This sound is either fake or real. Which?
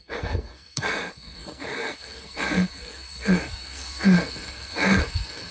fake